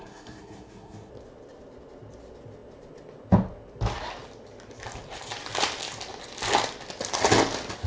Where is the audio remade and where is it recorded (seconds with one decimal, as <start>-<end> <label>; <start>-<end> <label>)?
0.0-1.1 remade; 1.1-7.9 recorded